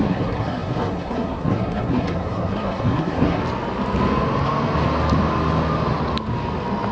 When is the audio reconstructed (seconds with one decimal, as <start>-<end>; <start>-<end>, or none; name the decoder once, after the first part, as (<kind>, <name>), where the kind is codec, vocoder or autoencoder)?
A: 0.0-3.4 (codec, SNAC)